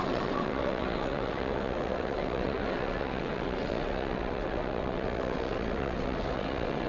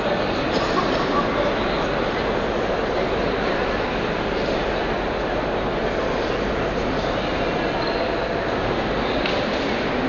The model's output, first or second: first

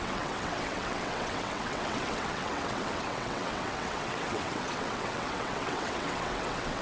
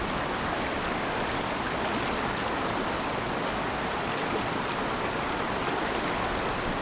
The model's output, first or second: first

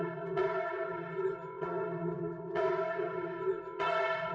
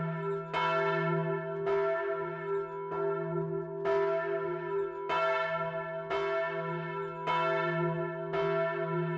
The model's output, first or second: first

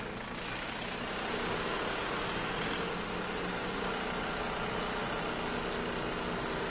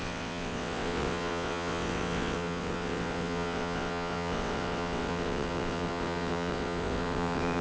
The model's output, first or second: second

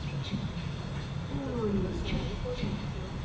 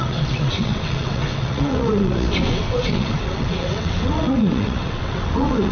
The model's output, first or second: second